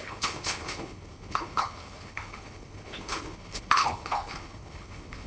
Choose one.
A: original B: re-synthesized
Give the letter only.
B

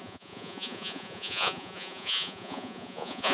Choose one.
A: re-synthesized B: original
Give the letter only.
A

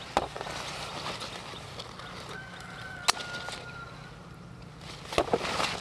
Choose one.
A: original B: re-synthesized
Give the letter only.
A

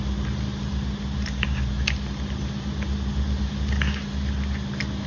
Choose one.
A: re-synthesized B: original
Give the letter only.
B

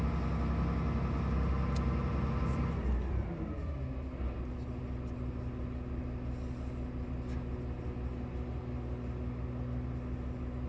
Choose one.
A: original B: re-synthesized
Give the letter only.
A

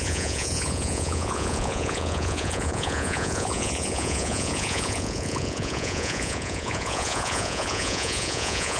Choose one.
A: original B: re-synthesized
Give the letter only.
B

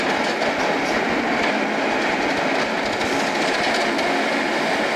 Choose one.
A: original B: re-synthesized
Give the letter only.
A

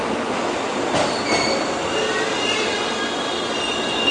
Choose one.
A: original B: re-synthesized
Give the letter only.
A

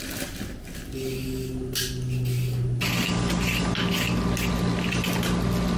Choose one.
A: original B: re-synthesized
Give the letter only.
A